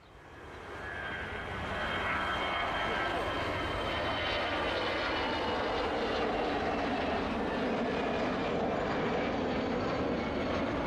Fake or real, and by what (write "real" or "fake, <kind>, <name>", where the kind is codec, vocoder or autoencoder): real